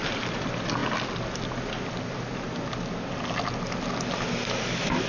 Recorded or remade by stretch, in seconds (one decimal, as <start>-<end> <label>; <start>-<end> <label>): 0.0-5.1 recorded